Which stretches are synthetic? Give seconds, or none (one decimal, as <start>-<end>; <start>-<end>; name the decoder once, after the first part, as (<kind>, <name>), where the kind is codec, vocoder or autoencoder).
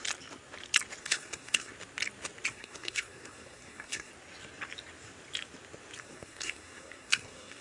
1.0-1.7 (codec, SNAC); 2.5-4.1; 6.0-7.6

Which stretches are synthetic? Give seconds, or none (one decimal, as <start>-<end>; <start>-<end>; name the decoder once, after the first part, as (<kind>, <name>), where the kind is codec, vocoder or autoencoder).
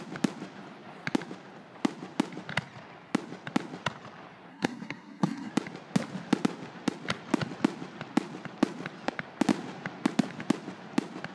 4.5-5.5 (codec, SNAC)